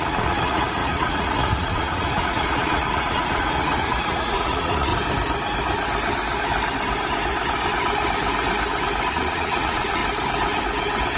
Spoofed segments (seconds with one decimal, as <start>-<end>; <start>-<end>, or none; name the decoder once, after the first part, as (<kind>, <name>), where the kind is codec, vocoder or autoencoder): 0.0-4.9 (vocoder, Vocos); 9.1-10.0